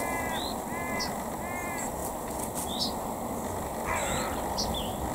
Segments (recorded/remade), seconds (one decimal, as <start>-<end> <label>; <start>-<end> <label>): 0.0-5.1 recorded